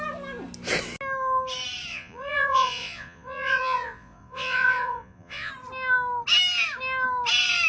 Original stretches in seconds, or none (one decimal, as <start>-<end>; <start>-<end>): 0.0-1.9; 5.5-7.7